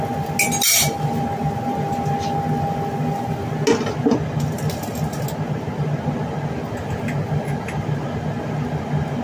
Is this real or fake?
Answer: real